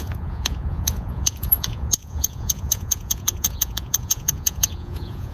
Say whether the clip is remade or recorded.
remade